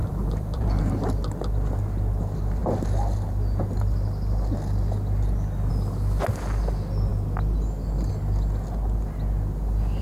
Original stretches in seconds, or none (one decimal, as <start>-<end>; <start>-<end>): 0.8-10.0